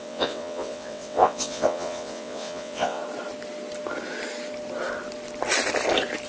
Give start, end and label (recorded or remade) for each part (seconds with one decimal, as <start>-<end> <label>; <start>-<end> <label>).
0.0-3.0 remade; 3.0-6.3 recorded